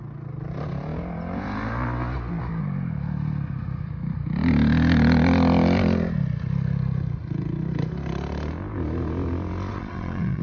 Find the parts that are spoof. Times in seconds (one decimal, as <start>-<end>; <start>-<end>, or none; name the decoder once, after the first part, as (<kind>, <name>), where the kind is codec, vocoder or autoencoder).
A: 9.7-10.4 (vocoder, WaveNeXt)